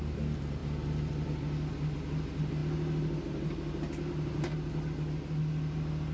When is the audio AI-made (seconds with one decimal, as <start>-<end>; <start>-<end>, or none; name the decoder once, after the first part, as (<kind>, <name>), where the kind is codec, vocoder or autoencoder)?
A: none